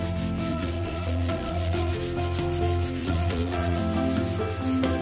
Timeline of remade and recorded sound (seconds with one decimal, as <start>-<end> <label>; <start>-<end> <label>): 0.0-0.5 recorded; 0.5-1.9 remade; 1.9-3.0 recorded; 3.0-3.8 remade; 3.8-5.0 recorded